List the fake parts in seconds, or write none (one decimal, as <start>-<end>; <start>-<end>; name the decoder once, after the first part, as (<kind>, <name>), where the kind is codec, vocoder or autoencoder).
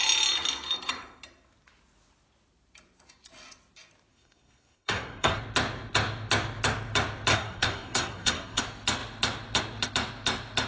4.1-5.4 (codec, SNAC); 7.3-8.6